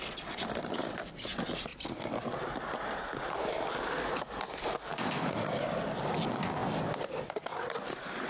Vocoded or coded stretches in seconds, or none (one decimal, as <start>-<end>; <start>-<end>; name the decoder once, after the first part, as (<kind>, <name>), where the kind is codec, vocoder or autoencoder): none